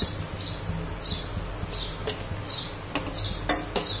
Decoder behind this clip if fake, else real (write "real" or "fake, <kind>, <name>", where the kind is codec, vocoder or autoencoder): real